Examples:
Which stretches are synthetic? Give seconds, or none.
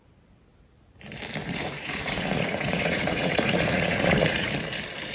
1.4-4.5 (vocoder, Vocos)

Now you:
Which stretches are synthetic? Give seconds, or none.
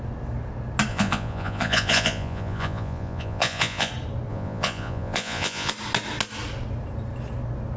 0.9-3.9 (vocoder, Vocos); 4.3-5.7